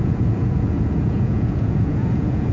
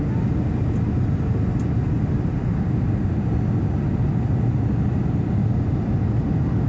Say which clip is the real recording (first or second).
second